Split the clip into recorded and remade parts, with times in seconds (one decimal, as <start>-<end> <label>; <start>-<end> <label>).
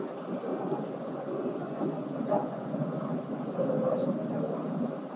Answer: 0.0-0.5 recorded; 0.5-3.6 remade; 3.6-5.2 recorded